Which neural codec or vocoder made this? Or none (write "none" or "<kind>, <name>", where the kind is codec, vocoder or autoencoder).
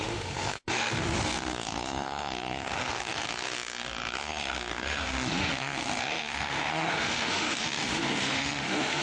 autoencoder, DAC-VAE